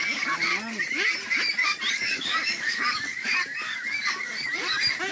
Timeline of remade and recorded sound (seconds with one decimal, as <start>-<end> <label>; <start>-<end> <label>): 0.0-0.5 remade; 0.5-1.9 recorded; 1.9-4.3 remade; 4.3-5.1 recorded